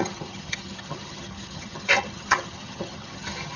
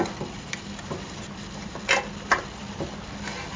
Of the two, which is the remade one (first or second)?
first